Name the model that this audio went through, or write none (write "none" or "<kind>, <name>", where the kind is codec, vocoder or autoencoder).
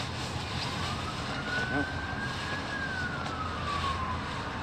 none